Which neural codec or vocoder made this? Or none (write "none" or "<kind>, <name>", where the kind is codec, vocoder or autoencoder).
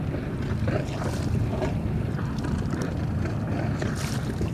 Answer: none